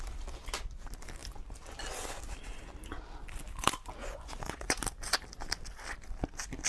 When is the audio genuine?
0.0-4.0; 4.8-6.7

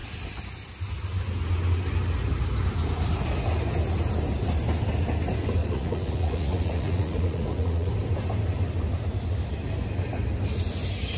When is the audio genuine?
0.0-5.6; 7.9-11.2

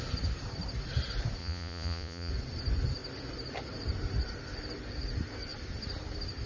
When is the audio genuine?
0.0-1.4; 2.3-6.5

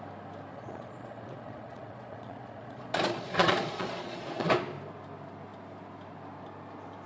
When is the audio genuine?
0.0-0.5; 4.5-7.1